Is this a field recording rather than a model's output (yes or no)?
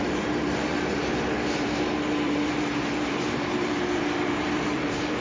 no